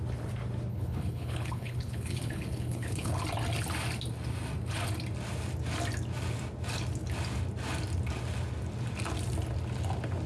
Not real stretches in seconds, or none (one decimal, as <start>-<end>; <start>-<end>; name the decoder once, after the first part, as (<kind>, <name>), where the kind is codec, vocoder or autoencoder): 0.7-3.2 (codec, HILCodec)